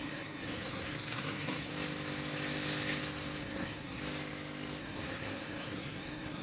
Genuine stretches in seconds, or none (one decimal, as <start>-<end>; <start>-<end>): 1.7-3.4; 4.0-4.8